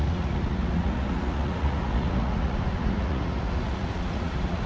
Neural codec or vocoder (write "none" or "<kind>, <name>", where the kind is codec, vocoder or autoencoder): vocoder, Vocos